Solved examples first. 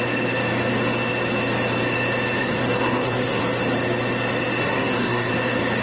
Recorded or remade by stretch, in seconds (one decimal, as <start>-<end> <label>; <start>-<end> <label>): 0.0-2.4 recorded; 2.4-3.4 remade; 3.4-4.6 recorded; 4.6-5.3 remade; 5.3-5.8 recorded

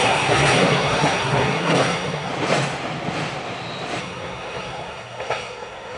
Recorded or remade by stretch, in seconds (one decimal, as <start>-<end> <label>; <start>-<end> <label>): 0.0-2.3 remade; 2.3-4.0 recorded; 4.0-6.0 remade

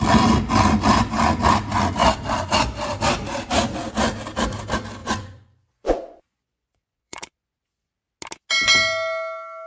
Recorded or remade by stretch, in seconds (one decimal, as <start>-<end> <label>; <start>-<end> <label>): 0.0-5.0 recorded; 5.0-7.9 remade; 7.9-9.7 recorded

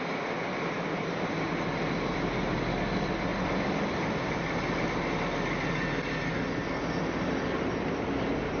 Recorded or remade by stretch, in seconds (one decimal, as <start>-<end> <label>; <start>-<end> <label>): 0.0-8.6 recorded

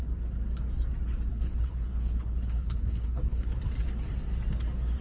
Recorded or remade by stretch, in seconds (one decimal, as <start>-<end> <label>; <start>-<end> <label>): 0.0-1.3 recorded; 1.3-3.6 remade; 3.6-5.0 recorded

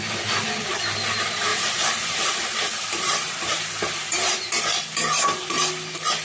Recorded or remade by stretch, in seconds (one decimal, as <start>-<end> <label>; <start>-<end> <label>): 0.0-1.5 recorded; 1.5-4.5 remade; 4.5-6.2 recorded